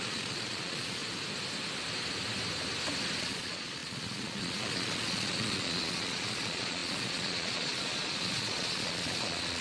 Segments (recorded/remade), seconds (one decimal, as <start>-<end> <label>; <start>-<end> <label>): 0.0-1.0 remade; 1.0-3.2 recorded; 3.2-9.6 remade